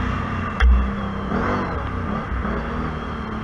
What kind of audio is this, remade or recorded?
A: recorded